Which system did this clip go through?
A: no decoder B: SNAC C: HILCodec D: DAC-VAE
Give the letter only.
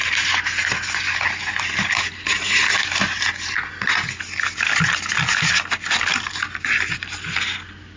A